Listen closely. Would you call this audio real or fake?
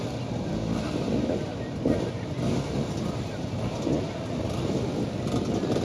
fake